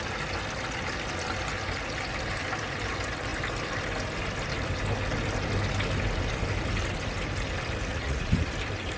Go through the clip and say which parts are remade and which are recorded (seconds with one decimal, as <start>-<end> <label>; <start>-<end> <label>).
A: 0.0-7.9 recorded; 7.9-8.5 remade; 8.5-9.0 recorded